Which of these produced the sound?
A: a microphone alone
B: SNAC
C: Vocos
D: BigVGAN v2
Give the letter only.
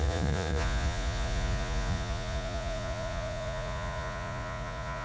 C